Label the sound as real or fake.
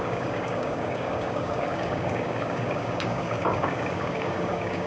fake